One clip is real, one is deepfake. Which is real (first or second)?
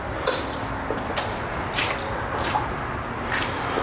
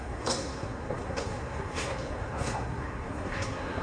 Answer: first